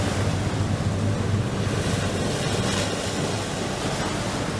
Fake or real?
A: real